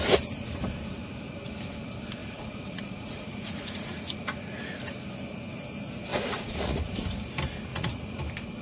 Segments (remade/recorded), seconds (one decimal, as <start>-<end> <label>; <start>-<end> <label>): 0.0-2.2 recorded; 2.2-4.6 remade; 4.6-6.1 recorded; 6.1-6.8 remade; 6.8-7.7 recorded; 7.7-8.2 remade; 8.2-8.6 recorded